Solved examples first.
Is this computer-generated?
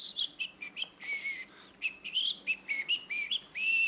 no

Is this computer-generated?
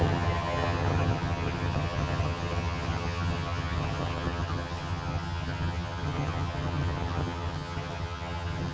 yes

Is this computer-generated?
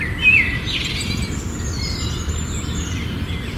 no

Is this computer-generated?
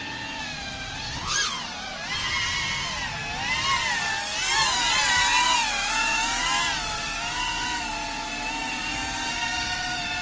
no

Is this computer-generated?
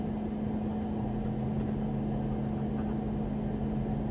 no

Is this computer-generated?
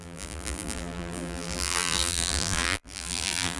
yes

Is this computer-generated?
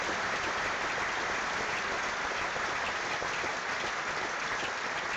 no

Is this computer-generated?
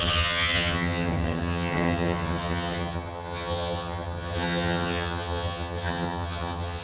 yes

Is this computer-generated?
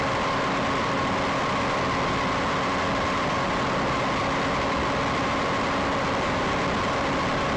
yes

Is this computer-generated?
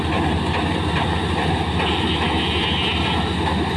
no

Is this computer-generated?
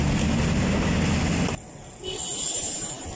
no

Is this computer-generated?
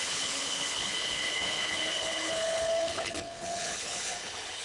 yes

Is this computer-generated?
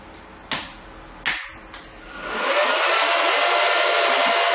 no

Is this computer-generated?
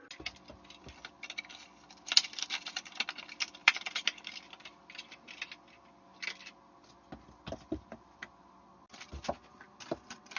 no